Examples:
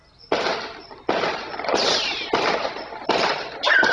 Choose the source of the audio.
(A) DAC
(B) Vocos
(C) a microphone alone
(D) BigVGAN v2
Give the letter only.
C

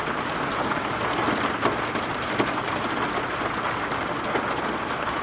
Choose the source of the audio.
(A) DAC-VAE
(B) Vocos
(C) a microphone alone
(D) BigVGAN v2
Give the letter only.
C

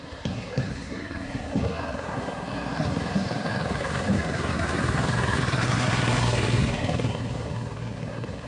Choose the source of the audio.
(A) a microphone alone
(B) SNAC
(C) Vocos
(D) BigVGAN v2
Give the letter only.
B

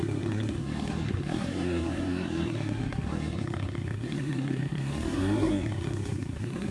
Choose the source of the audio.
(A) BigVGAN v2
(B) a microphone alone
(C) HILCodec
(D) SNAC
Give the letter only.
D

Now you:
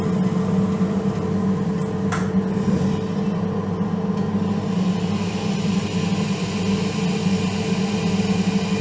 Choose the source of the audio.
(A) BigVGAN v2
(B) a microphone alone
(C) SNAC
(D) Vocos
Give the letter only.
B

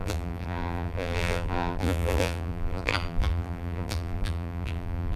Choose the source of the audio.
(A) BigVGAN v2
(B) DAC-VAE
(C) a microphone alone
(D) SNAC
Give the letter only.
A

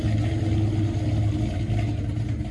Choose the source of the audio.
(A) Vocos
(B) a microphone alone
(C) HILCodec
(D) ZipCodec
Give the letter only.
B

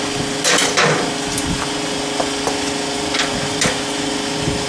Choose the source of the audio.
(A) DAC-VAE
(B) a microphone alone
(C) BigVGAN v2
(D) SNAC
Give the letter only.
B